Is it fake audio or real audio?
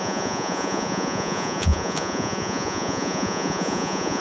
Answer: fake